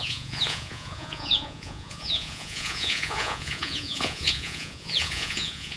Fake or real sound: fake